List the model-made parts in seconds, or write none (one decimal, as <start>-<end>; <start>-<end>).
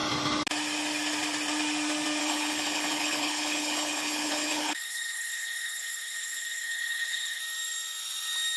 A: 2.2-7.4